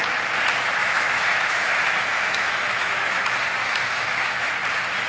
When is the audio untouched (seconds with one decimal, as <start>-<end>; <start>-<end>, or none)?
0.0-0.8; 3.2-3.6; 4.5-5.1